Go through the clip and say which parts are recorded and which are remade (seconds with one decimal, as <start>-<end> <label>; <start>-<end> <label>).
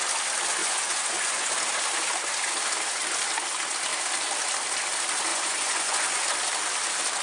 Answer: 0.0-0.6 recorded; 0.6-1.5 remade; 1.5-5.3 recorded; 5.3-6.2 remade; 6.2-7.2 recorded